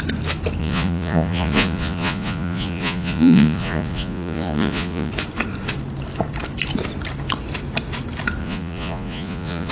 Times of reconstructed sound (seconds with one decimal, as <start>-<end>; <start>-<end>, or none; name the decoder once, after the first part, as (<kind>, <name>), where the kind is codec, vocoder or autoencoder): 0.6-5.1 (vocoder, Vocos); 8.4-9.7